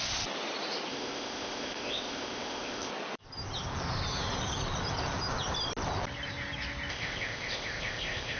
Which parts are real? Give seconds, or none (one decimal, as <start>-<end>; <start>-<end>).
0.0-0.9; 2.9-6.9